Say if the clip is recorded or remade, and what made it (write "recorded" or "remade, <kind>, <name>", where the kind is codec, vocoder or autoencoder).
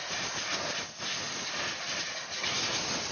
remade, vocoder, BigVGAN v2